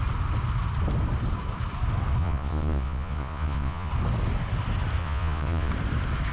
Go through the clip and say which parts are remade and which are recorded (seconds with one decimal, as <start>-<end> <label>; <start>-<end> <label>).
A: 0.0-2.2 recorded; 2.2-3.9 remade; 3.9-5.0 recorded; 5.0-5.7 remade; 5.7-6.3 recorded